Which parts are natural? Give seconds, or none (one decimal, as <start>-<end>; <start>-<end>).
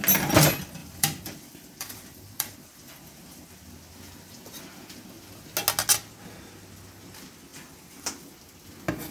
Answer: 0.0-0.8; 3.5-7.5; 8.1-9.1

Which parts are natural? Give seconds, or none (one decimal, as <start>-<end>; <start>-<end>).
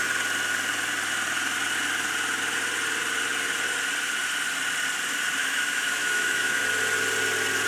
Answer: 0.0-5.4; 6.7-7.7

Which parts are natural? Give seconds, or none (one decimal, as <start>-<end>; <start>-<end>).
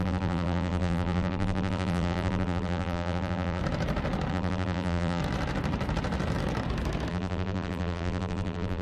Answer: 3.6-4.3; 5.2-7.1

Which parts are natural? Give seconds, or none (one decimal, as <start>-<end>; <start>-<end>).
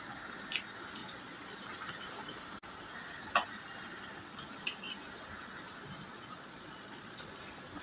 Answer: 0.0-1.0; 1.6-6.1; 7.3-7.8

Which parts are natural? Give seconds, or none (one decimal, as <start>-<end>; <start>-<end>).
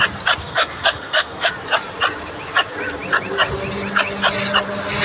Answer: 0.0-0.4; 1.5-5.0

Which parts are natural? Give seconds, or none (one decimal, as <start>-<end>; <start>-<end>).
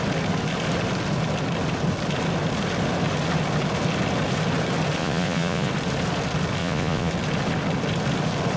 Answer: 0.0-5.0; 5.7-6.6; 7.1-8.6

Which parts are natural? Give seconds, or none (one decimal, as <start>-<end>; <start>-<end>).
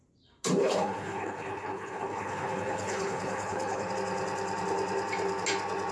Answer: 0.0-0.6; 3.9-5.9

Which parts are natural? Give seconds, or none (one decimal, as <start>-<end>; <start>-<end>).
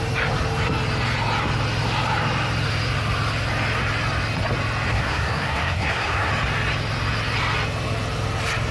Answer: 0.0-4.9; 6.3-8.7